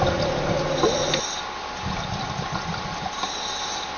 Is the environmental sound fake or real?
real